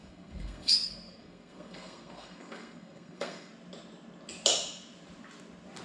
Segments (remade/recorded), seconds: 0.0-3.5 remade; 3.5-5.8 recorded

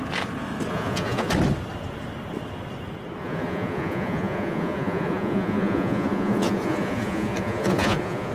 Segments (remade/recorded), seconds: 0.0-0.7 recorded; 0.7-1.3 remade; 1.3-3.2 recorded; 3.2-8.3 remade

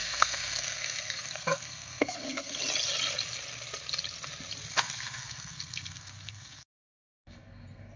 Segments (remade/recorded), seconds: 0.0-2.6 remade; 2.6-4.7 recorded; 4.7-8.0 remade